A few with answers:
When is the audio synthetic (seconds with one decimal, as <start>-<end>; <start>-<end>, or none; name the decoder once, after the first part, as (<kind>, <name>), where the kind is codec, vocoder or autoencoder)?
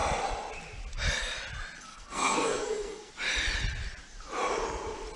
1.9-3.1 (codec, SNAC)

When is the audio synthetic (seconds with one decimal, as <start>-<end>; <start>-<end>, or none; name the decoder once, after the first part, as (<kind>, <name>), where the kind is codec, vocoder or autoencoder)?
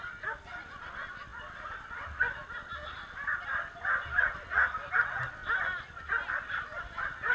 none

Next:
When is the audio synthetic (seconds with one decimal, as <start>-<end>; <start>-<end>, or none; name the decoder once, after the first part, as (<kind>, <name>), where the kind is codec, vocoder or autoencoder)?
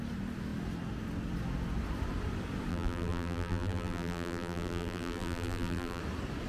2.7-6.0 (vocoder, BigVGAN v2)